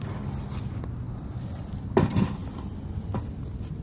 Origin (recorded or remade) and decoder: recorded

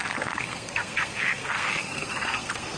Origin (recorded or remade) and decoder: remade, codec, SNAC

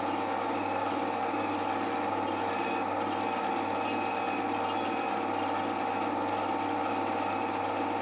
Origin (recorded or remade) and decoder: recorded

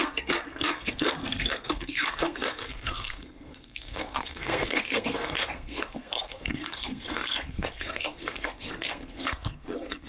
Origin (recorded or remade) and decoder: remade, codec, SNAC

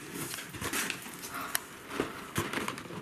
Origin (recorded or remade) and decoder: recorded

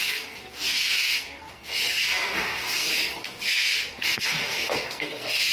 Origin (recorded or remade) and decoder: remade, codec, SNAC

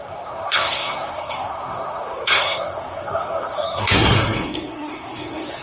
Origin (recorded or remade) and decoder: remade, codec, SNAC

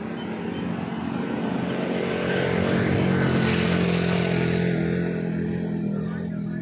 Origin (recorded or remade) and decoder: recorded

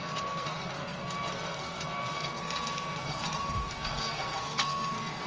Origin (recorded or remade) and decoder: remade, codec, SNAC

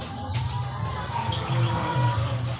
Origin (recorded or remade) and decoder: recorded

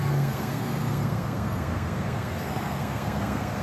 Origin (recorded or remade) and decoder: remade, codec, SNAC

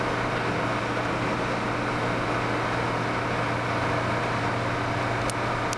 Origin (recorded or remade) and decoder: recorded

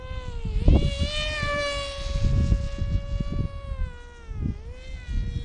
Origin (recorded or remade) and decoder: recorded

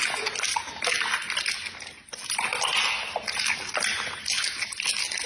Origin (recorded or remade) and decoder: recorded